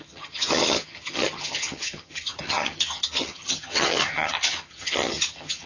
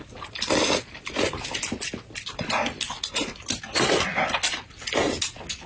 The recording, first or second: second